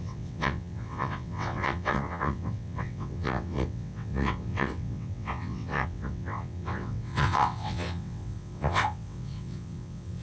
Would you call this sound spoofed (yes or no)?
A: yes